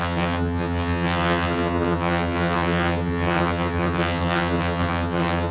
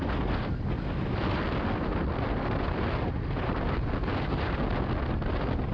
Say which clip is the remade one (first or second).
first